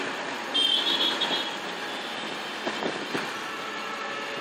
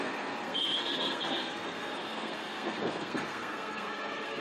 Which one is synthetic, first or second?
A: second